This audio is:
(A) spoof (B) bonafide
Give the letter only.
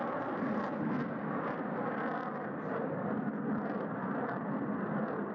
A